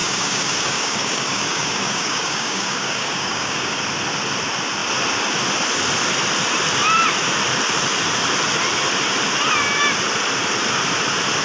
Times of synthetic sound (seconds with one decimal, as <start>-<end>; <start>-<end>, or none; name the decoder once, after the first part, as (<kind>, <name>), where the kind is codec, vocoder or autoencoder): 0.0-3.8 (codec, DAC)